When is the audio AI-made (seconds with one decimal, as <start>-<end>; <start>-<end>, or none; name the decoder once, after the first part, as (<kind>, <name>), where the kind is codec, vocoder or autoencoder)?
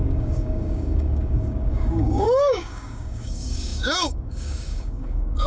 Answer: 0.0-5.5 (codec, DAC)